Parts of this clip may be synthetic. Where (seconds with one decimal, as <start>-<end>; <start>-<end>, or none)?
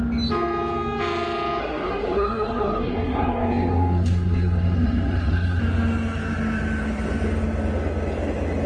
1.6-5.6